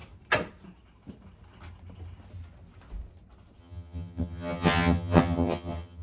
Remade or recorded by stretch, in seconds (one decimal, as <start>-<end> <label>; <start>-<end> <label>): 0.0-3.6 recorded; 3.6-6.0 remade